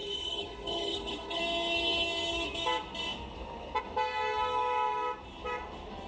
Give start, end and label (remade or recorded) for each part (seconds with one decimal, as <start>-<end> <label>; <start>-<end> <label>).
0.0-1.4 remade; 1.4-6.1 recorded